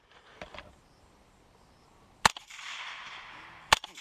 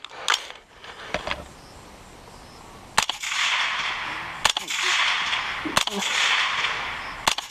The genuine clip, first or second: second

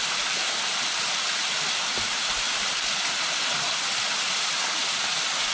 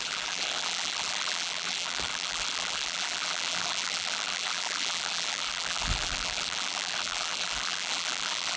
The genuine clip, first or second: first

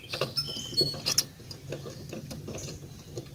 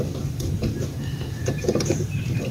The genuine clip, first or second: first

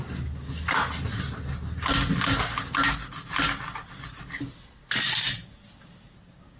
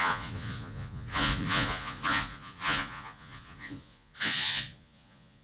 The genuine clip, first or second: first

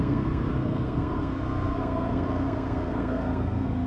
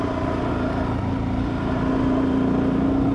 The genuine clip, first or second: second